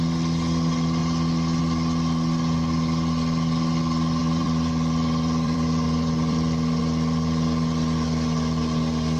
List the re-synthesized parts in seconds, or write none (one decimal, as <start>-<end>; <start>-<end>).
1.0-1.6; 4.2-6.8